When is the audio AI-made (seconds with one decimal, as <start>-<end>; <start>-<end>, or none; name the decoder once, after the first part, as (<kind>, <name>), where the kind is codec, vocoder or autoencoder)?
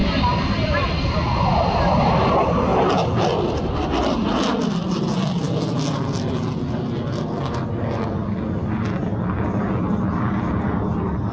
none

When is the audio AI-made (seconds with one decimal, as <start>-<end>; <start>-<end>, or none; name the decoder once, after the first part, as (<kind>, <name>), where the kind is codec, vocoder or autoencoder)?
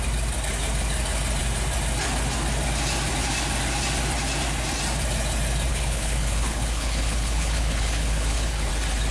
5.7-8.7 (codec, HILCodec)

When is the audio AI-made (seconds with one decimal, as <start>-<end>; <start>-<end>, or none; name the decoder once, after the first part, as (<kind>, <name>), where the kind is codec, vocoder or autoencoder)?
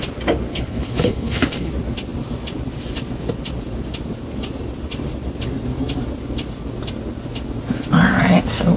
0.5-1.7 (codec, HILCodec)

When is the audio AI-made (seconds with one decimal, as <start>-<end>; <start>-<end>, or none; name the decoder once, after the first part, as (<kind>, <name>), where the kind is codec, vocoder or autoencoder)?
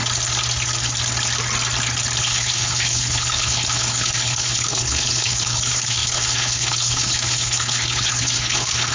2.2-8.9 (codec, HILCodec)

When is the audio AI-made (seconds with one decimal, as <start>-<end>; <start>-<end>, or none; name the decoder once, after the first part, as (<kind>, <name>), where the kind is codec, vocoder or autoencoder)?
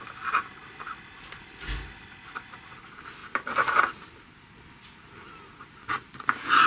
none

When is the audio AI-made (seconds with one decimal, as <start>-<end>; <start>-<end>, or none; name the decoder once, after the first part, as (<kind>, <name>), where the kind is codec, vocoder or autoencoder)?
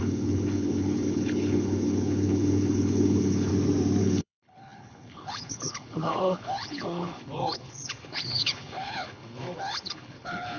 0.0-3.5 (codec, HILCodec); 4.0-10.6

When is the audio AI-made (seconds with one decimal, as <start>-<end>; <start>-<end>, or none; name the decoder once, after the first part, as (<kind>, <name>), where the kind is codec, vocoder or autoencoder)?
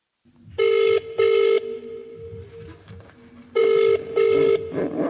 none